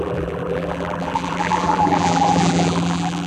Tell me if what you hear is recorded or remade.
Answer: remade